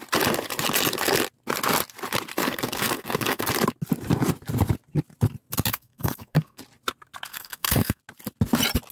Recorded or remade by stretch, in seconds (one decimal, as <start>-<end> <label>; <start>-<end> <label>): 0.0-2.4 recorded; 2.4-3.5 remade; 3.5-5.7 recorded; 5.7-6.6 remade; 6.6-7.3 recorded; 7.3-8.0 remade; 8.0-8.9 recorded